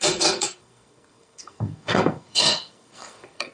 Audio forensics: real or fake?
fake